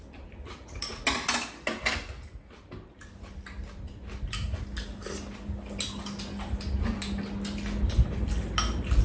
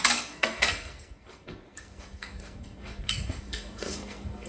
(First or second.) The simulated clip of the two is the second